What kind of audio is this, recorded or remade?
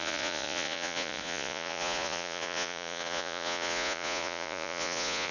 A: remade